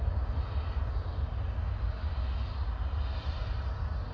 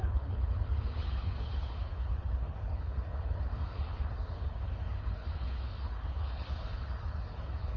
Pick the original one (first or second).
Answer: first